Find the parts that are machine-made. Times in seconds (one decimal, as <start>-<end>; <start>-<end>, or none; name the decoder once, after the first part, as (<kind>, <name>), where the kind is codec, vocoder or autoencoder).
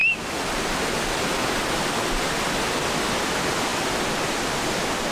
none